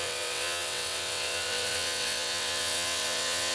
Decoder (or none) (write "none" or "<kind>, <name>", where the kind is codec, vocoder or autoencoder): vocoder, WaveNeXt